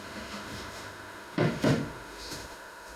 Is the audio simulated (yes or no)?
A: yes